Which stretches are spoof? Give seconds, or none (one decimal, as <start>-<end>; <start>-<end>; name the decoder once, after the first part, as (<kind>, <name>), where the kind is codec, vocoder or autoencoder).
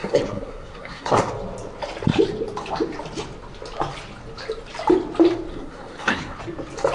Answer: 0.0-1.3 (codec, SNAC); 5.5-6.4